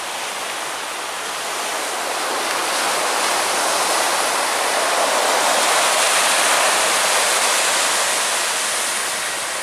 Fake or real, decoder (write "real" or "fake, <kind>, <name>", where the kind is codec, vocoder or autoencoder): real